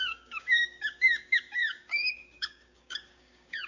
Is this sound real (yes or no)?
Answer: no